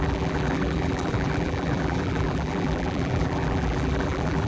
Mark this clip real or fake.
fake